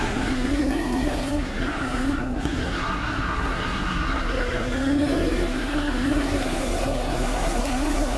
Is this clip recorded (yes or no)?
no